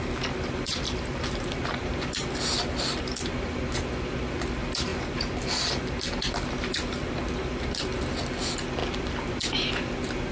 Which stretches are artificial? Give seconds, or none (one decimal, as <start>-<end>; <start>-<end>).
0.0-10.3

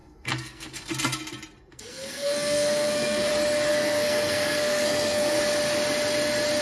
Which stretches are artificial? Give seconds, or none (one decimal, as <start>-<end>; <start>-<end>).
0.0-0.9; 1.7-3.3; 3.7-5.4

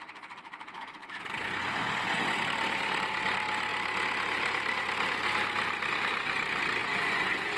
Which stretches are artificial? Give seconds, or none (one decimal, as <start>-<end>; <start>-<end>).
1.0-2.4; 6.8-7.6

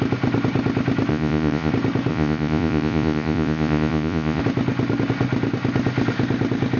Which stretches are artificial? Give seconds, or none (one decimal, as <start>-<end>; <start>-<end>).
1.1-1.7; 2.1-4.4

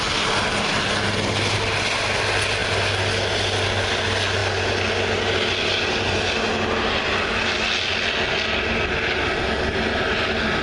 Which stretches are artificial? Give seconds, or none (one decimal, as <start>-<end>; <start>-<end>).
none

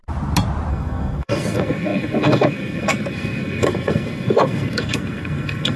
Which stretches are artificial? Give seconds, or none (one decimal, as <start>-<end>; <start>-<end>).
0.7-5.8

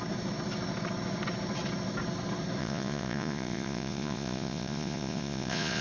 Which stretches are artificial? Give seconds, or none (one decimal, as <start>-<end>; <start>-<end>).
2.6-5.8